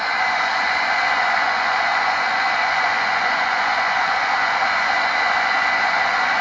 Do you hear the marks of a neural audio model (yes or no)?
yes